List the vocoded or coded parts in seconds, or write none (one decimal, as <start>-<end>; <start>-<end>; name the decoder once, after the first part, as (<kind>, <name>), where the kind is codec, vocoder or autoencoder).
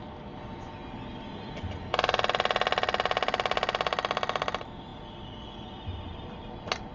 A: none